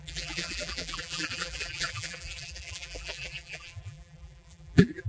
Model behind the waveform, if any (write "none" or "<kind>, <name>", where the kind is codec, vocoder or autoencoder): vocoder, BigVGAN v2